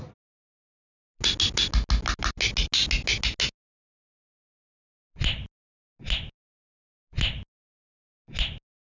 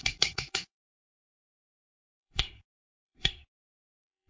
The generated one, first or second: second